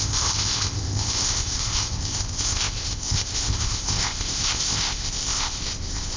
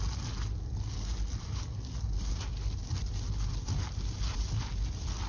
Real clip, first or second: second